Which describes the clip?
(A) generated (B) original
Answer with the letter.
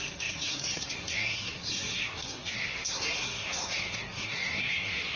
A